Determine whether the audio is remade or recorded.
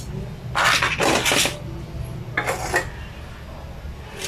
recorded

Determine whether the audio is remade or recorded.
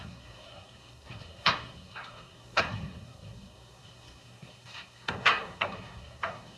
remade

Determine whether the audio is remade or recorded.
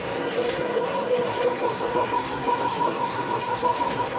remade